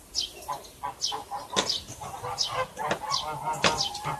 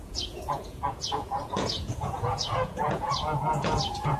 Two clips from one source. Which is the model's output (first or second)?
second